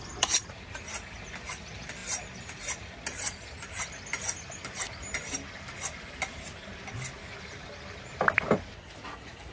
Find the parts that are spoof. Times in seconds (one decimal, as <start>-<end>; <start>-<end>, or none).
none